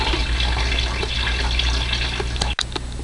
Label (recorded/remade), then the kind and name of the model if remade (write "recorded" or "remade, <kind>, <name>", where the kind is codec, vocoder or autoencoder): recorded